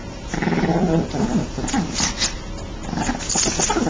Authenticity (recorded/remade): recorded